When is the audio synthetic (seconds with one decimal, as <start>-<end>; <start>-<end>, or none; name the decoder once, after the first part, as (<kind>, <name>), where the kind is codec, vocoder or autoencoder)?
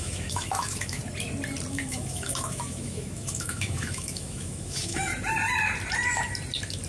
0.0-1.0 (autoencoder, DAC-VAE); 1.7-5.1